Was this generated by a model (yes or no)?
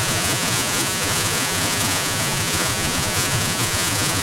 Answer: yes